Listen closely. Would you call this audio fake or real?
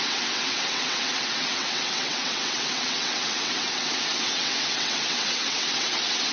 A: fake